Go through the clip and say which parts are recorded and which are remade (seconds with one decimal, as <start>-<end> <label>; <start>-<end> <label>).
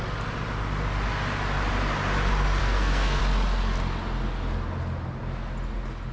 0.0-2.6 recorded; 2.6-3.2 remade; 3.2-6.1 recorded